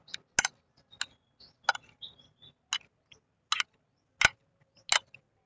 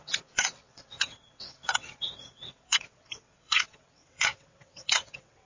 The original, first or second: first